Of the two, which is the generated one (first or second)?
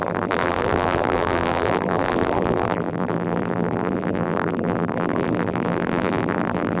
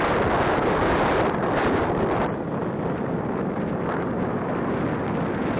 first